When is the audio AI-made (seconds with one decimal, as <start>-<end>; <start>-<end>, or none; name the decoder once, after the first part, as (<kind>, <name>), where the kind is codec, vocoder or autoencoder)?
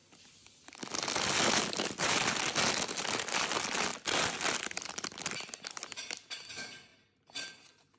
none